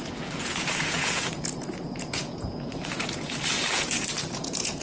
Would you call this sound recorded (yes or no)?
no